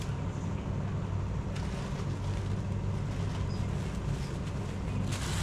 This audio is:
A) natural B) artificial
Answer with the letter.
A